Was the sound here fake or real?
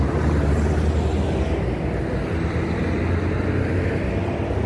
real